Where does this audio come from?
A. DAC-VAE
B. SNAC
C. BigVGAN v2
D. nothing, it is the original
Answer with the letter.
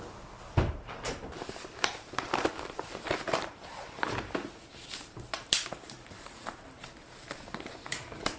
C